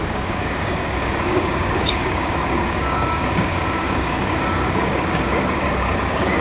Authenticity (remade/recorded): remade